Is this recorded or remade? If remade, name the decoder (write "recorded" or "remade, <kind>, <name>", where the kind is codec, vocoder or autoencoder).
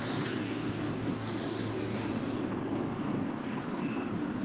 remade, codec, DAC